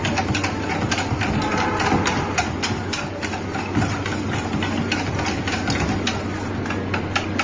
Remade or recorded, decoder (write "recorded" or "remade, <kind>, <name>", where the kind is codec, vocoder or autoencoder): recorded